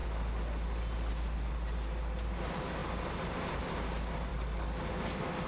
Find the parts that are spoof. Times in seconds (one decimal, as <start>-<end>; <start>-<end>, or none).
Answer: 4.3-4.9